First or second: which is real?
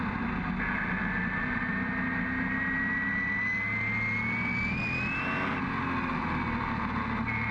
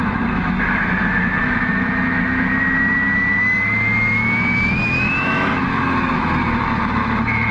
first